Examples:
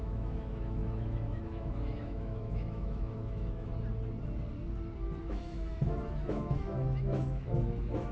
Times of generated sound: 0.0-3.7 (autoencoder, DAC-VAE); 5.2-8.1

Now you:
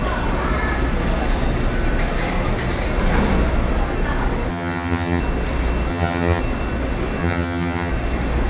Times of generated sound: 4.5-5.2 (vocoder, HiFi-GAN); 5.9-6.4; 7.2-7.9